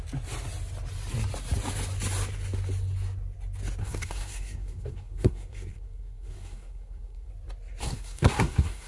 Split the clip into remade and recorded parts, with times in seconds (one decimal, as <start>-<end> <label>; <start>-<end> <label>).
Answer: 0.0-3.8 recorded; 3.8-7.3 remade; 7.3-7.8 recorded; 7.8-8.9 remade